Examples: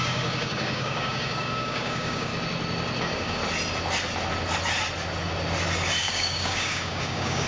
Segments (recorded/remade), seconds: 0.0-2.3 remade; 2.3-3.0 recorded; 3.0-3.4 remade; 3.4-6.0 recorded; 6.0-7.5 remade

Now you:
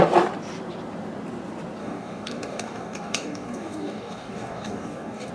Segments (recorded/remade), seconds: 0.0-1.8 recorded; 1.8-5.3 remade

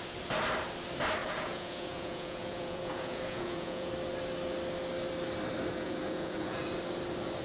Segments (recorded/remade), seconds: 0.0-1.2 recorded; 1.2-3.9 remade; 3.9-5.7 recorded; 5.7-6.7 remade; 6.7-7.4 recorded

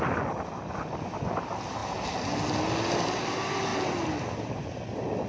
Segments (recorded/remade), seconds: 0.0-5.3 recorded

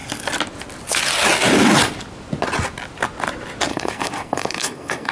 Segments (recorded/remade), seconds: 0.0-3.7 recorded; 3.7-5.1 remade